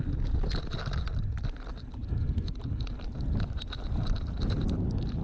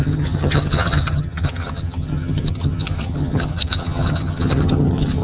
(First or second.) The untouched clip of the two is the first